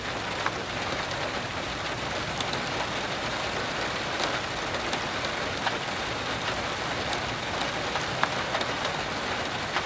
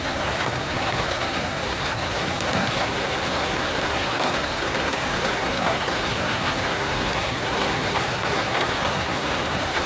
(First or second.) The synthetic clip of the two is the second